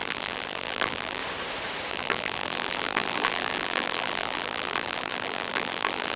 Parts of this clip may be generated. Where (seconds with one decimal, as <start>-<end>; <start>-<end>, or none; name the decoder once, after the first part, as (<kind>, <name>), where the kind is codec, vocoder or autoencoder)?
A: 0.0-1.2 (vocoder, BigVGAN v2); 1.9-6.2